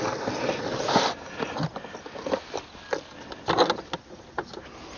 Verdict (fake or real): real